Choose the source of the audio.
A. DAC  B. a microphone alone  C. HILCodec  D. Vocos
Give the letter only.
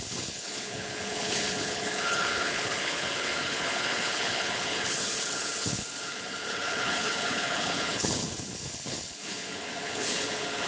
C